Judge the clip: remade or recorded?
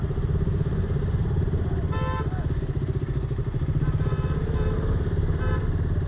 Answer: recorded